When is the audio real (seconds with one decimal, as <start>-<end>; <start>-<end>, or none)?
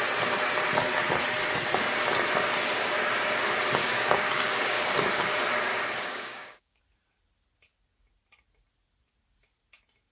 0.0-3.8; 4.9-5.7; 6.8-10.1